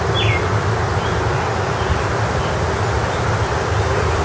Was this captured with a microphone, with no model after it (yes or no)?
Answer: yes